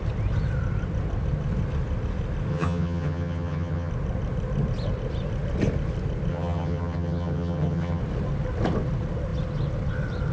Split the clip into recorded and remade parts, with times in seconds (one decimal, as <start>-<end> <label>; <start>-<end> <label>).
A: 0.0-2.5 recorded; 2.5-3.9 remade; 3.9-6.3 recorded; 6.3-8.0 remade; 8.0-10.3 recorded